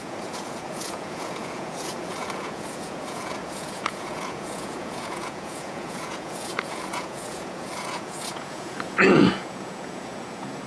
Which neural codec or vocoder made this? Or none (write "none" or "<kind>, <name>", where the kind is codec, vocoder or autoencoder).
vocoder, Vocos